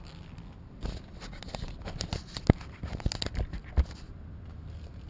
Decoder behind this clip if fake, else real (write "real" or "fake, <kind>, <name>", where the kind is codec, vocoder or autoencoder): real